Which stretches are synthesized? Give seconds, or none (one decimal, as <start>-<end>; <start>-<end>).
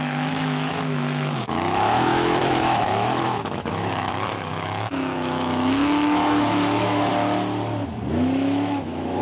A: 0.0-7.1; 8.1-9.2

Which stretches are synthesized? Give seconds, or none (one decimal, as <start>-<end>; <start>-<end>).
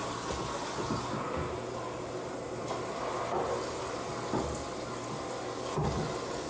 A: none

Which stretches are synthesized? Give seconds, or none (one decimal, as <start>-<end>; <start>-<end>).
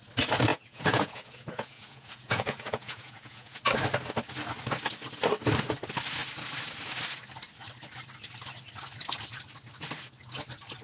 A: 0.5-3.6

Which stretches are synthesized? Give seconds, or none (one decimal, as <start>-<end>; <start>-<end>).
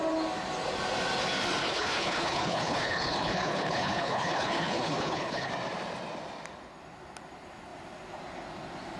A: 1.6-5.5